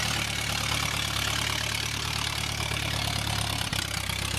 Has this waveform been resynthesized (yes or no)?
yes